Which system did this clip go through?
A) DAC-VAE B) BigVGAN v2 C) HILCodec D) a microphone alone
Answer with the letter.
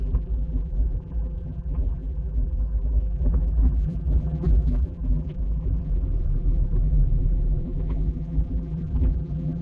B